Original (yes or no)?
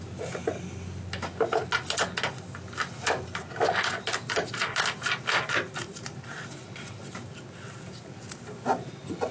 yes